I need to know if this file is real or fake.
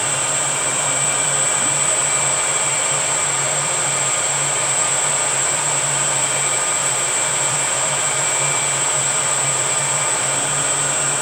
fake